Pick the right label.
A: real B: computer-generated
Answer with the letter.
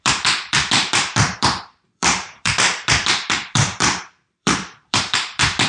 B